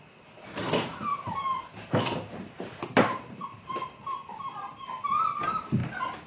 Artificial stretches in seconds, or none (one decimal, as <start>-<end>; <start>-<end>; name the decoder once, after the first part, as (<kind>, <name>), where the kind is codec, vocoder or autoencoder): none